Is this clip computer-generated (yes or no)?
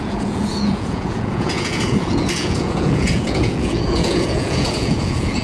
yes